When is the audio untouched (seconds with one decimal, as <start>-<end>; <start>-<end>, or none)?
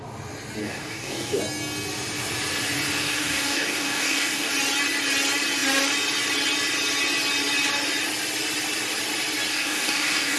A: 0.0-0.6; 1.4-3.0; 4.5-9.5